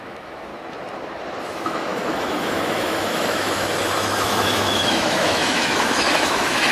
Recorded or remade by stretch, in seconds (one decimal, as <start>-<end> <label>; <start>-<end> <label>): 0.0-0.5 remade; 0.5-1.4 recorded; 1.4-6.7 remade